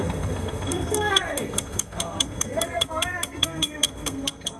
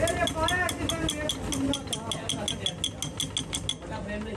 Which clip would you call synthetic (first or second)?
first